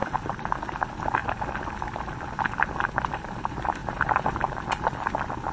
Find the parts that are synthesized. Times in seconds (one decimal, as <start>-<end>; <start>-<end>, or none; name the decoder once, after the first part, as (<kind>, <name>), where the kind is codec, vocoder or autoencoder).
0.0-0.6 (vocoder, BigVGAN v2); 1.2-2.3